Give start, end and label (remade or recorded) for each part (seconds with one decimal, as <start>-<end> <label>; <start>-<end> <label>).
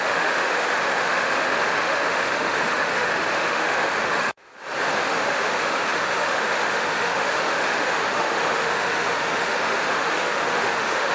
0.0-4.5 remade; 4.5-5.0 recorded; 5.0-11.1 remade